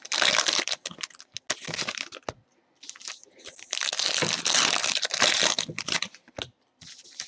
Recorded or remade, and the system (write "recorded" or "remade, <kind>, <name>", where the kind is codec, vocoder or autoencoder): recorded